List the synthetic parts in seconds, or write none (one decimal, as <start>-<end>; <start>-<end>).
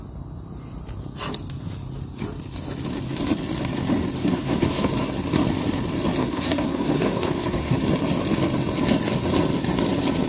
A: 4.2-4.9; 6.2-7.8